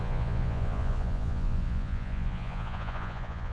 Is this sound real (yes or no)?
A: no